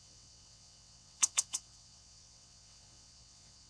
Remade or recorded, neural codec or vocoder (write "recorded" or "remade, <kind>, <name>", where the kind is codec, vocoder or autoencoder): remade, vocoder, WaveNeXt